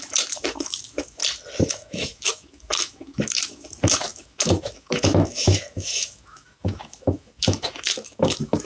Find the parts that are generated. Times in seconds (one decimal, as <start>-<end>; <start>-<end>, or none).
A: 0.0-1.2; 1.7-8.6